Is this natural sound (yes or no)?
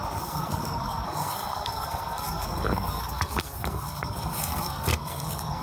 no